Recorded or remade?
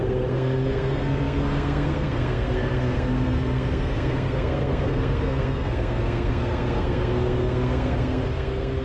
remade